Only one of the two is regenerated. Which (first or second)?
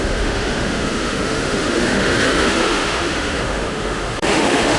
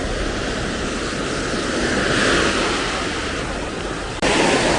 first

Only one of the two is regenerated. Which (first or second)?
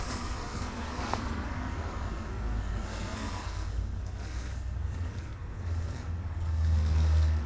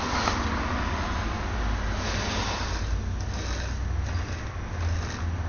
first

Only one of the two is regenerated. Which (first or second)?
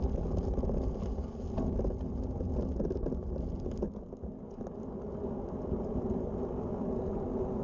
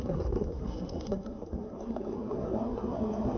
second